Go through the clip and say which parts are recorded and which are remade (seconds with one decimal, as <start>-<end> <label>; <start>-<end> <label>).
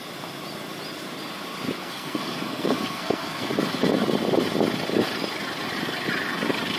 0.0-1.8 recorded; 1.8-3.5 remade; 3.5-6.8 recorded